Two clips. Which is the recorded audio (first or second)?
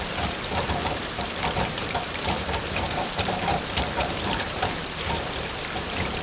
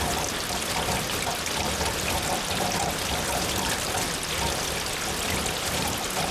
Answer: second